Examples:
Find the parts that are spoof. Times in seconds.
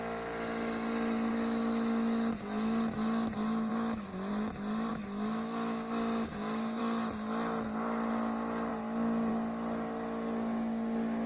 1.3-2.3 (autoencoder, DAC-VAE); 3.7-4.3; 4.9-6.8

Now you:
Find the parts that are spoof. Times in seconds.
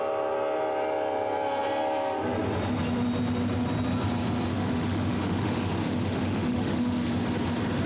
4.5-7.1 (autoencoder, DAC-VAE)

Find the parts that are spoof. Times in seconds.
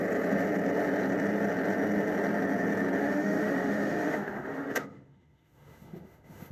3.0-6.5 (autoencoder, DAC-VAE)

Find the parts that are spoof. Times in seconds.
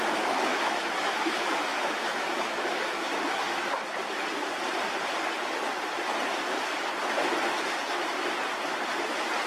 0.5-3.8 (autoencoder, DAC-VAE)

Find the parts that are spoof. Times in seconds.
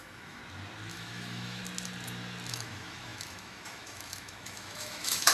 0.0-0.4 (autoencoder, DAC-VAE); 0.9-1.6; 2.5-5.3